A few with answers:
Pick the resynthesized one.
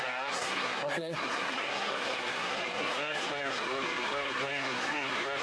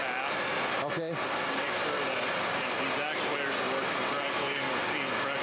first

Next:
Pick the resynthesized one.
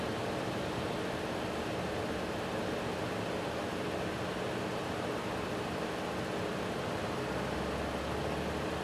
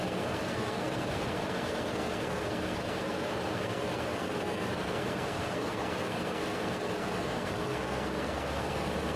second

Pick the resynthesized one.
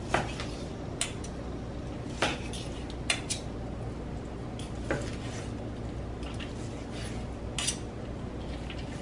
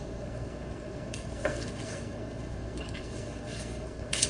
second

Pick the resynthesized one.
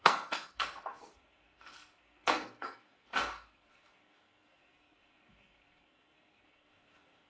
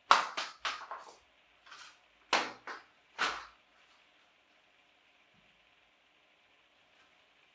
first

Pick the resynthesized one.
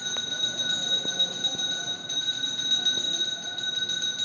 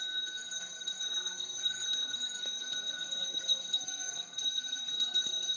second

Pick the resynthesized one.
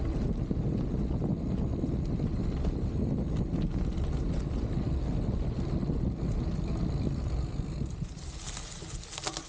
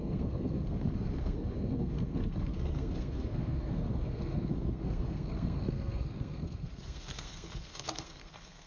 second